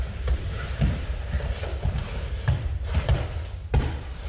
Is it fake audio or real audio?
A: fake